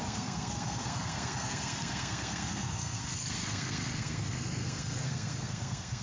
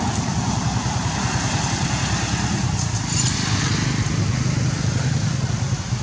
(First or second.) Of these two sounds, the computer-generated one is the first